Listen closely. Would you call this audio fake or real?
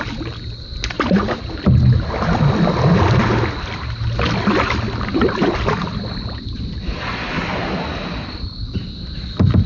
real